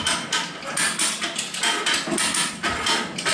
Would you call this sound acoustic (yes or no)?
yes